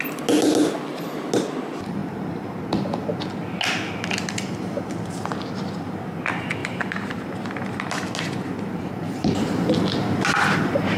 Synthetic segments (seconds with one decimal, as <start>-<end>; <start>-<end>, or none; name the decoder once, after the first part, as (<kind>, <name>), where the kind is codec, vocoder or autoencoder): 6.6-7.3 (vocoder, BigVGAN v2); 8.7-9.7